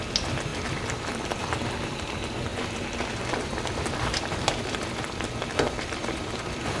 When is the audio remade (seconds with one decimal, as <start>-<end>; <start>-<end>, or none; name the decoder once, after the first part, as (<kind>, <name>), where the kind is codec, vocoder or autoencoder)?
0.5-1.4 (vocoder, BigVGAN v2); 2.5-6.8